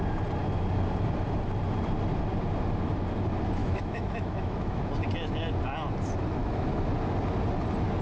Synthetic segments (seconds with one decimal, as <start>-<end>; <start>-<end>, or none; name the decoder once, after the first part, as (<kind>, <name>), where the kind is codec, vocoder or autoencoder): 3.6-4.8 (autoencoder, DAC-VAE); 6.4-6.9